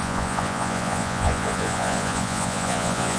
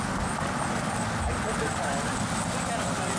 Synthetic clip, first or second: first